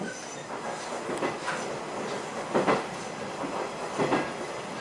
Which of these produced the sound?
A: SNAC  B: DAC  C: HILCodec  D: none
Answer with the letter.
D